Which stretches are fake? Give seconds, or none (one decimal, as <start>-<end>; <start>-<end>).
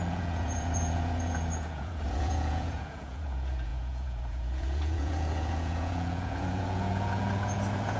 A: 0.0-8.0